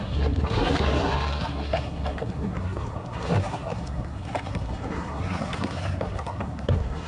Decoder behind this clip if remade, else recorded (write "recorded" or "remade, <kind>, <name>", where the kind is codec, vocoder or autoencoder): remade, codec, SNAC